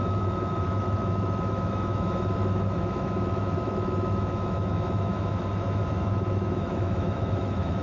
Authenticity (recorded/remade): remade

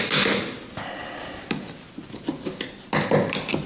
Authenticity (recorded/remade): recorded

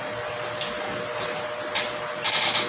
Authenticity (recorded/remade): recorded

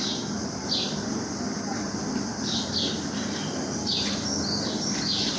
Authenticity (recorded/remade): recorded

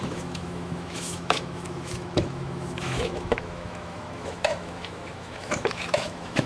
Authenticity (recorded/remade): remade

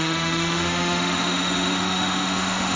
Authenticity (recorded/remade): remade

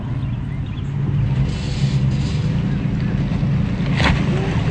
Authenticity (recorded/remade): recorded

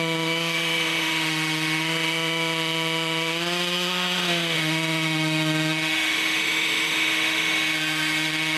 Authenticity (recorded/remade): remade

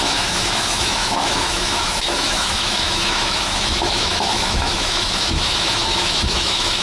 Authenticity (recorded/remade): remade